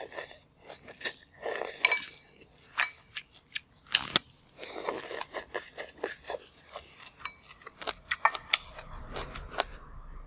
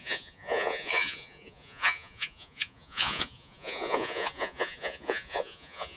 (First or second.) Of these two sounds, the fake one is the second